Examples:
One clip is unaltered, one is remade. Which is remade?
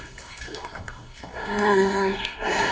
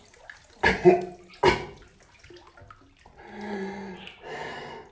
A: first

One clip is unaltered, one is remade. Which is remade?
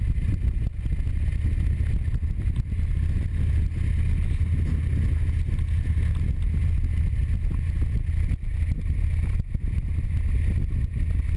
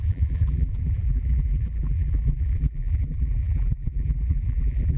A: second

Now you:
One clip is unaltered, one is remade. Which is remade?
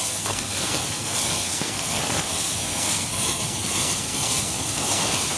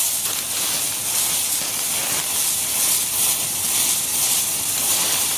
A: first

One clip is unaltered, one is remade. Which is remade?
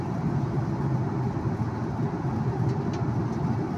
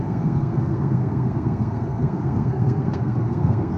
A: second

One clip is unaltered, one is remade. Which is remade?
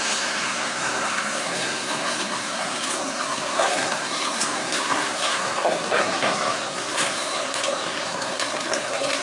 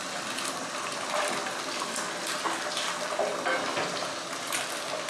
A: first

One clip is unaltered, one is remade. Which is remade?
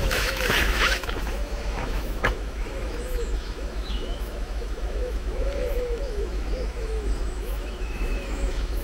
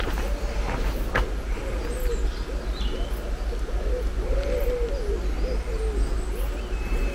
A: first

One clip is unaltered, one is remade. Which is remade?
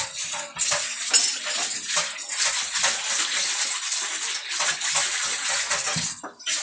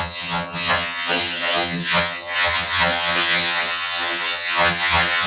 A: second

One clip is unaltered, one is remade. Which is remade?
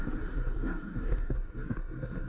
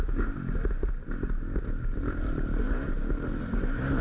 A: first